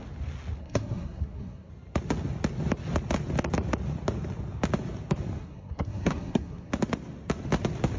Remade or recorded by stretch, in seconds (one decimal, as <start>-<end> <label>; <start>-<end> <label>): 0.0-0.6 recorded; 0.6-1.7 remade; 1.7-5.4 recorded; 5.4-6.7 remade; 6.7-8.0 recorded